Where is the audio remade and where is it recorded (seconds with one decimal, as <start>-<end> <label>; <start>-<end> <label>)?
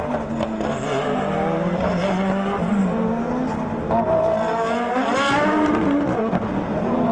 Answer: 0.0-7.1 recorded